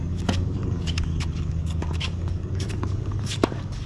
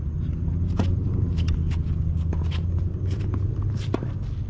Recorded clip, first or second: second